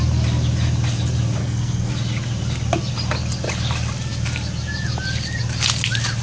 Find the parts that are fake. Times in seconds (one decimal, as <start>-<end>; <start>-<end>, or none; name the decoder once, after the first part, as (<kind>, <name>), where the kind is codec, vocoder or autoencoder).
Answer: 1.4-1.9 (codec, SNAC)